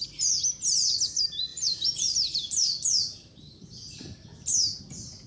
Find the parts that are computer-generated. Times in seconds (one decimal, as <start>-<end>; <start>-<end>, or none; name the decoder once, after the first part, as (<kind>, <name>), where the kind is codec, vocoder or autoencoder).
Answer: 1.5-3.8 (vocoder, BigVGAN v2)